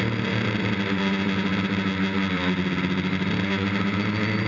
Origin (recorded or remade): recorded